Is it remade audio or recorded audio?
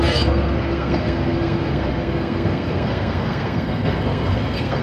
remade